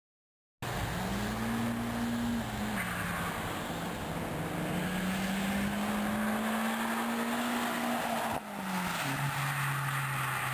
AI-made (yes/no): no